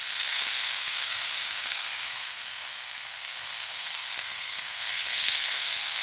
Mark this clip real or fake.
fake